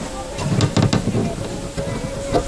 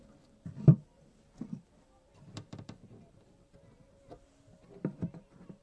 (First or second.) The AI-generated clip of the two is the second